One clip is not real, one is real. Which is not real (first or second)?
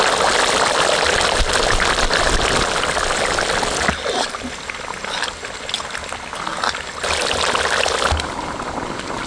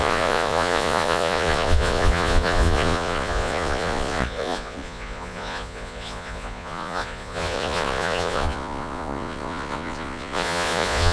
second